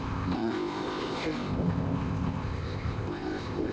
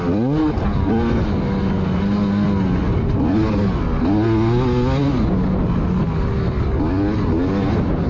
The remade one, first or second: first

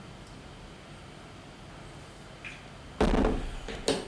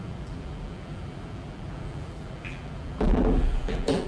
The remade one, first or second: second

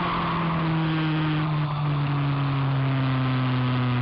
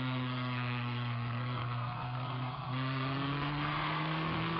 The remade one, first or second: second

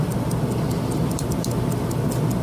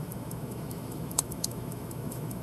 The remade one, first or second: second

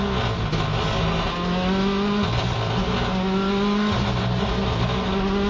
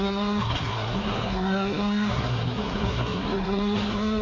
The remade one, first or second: second